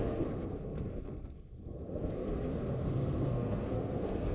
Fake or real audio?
fake